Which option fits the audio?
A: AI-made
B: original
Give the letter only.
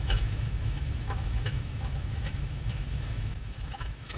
A